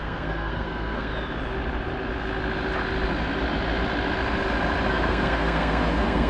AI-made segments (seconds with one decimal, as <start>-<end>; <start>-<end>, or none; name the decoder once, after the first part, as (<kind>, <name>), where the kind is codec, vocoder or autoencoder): 0.0-1.1 (codec, SNAC); 4.9-6.3